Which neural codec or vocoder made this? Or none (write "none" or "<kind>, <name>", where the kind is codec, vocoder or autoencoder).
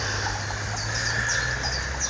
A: none